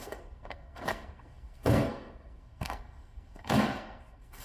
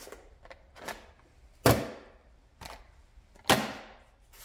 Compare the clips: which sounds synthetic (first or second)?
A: first